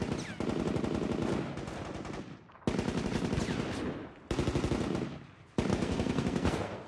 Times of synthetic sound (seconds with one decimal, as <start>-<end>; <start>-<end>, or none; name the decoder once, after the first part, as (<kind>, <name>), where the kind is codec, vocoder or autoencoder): 5.7-6.9 (codec, SNAC)